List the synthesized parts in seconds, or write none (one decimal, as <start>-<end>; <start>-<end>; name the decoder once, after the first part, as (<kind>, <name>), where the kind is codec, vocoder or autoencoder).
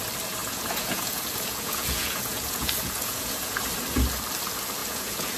0.4-3.6 (vocoder, Vocos); 4.8-5.4